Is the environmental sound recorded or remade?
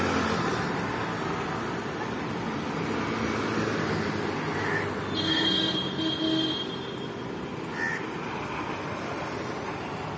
recorded